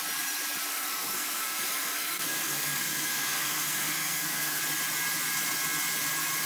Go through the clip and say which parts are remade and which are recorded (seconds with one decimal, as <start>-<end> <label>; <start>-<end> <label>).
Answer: 0.0-0.7 recorded; 0.7-4.6 remade; 4.6-6.5 recorded